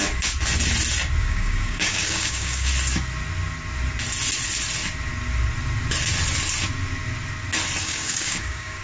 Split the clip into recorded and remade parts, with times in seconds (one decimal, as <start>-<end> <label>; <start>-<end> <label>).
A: 0.0-1.2 recorded; 1.2-2.7 remade; 2.7-7.8 recorded; 7.8-8.8 remade